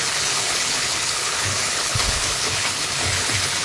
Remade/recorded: remade